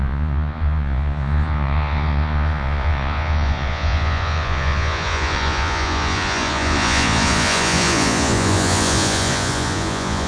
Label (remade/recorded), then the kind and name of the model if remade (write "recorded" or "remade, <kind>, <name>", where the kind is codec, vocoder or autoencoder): remade, vocoder, Vocos